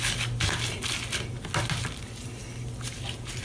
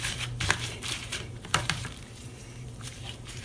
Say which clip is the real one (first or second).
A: first